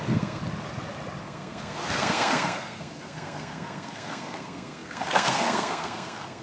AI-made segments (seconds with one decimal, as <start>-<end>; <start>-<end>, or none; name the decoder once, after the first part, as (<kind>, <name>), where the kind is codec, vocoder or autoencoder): 0.0-0.4 (codec, SNAC); 1.2-6.4